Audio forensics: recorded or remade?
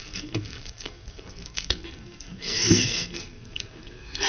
remade